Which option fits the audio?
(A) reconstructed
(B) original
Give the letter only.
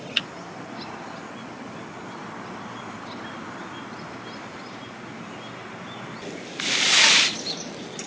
B